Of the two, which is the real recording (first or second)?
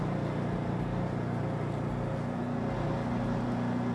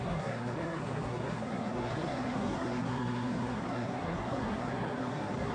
first